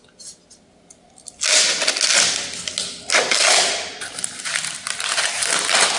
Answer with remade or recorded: recorded